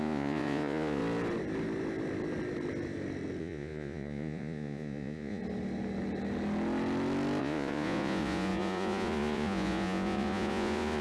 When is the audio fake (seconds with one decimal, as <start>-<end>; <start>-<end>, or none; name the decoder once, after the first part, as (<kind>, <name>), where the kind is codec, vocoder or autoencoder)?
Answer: 0.0-1.0 (vocoder, Vocos); 3.4-5.4; 7.4-11.0